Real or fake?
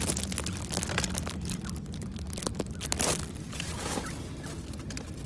real